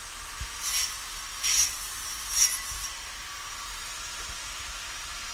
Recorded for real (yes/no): yes